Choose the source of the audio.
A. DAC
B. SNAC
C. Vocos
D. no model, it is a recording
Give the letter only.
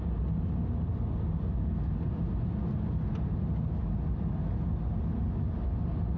D